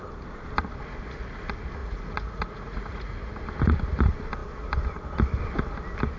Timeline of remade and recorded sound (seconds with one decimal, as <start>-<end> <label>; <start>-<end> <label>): 0.0-1.8 recorded; 1.8-3.4 remade; 3.4-6.2 recorded